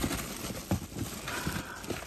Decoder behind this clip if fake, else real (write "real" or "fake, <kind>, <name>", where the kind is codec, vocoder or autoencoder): real